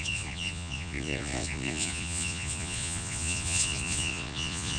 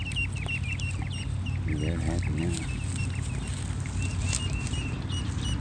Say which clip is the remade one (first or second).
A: first